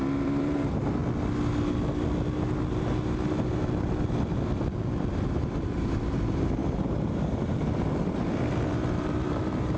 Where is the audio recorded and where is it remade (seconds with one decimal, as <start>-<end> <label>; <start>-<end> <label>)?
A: 0.0-1.0 remade; 1.0-5.3 recorded; 5.3-9.8 remade